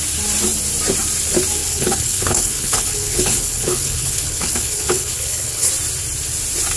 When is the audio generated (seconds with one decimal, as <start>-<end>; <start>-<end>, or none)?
1.6-5.7